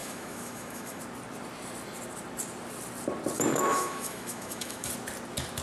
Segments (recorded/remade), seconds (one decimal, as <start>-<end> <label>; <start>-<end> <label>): 0.0-1.0 remade; 1.0-3.5 recorded; 3.5-4.9 remade; 4.9-5.6 recorded